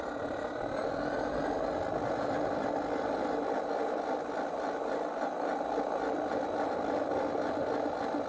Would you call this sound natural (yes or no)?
yes